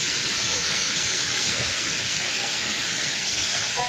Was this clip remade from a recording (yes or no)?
yes